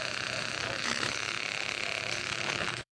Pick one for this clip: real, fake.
fake